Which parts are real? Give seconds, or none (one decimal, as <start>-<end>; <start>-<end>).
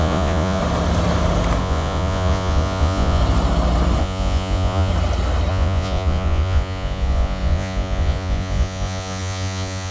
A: 0.6-1.6; 3.2-4.0; 4.9-5.5